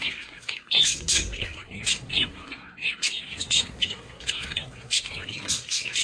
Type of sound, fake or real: fake